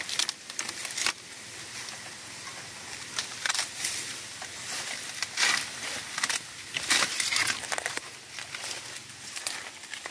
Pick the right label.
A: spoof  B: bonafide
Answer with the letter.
B